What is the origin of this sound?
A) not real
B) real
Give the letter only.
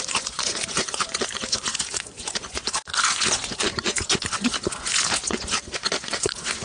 A